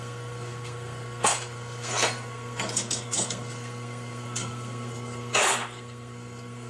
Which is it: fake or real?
fake